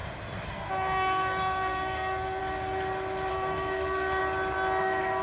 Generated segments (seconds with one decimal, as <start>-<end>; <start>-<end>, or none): 0.5-2.4; 3.3-4.2; 4.8-5.2